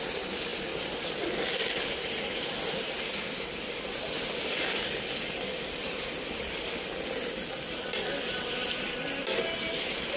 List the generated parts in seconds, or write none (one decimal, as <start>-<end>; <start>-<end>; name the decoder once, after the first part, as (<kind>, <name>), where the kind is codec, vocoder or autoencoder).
none